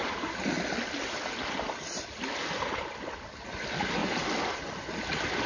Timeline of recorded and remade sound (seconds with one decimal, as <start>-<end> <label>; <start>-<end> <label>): 0.0-5.5 recorded